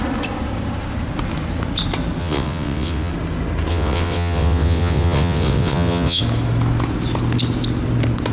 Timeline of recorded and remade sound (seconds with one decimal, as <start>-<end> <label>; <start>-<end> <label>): 0.0-2.2 recorded; 2.2-3.1 remade; 3.1-3.7 recorded; 3.7-6.2 remade; 6.2-8.3 recorded